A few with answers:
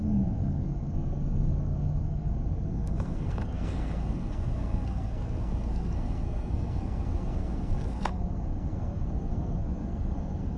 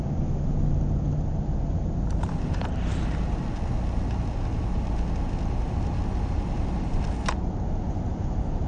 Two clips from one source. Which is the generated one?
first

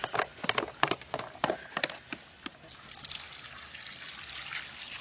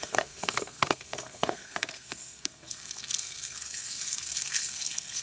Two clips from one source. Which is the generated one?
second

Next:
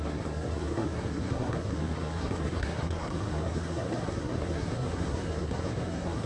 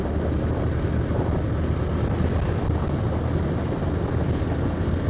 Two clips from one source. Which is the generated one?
first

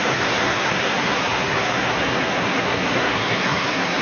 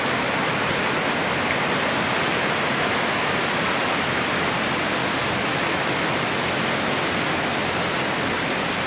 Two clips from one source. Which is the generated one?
first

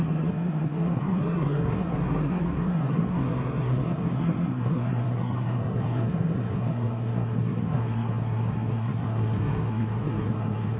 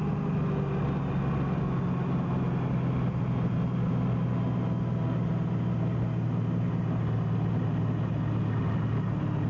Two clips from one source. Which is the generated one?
first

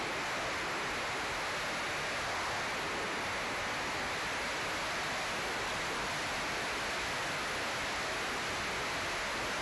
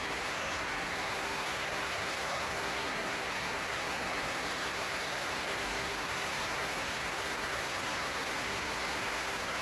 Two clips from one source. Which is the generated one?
second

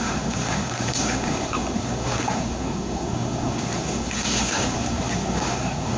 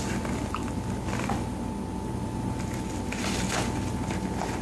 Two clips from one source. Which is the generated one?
first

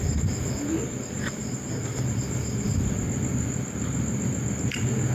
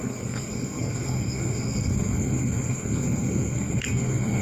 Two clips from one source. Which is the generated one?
second